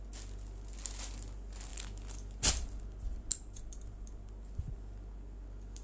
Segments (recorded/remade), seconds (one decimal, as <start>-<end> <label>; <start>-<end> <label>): 0.0-5.8 recorded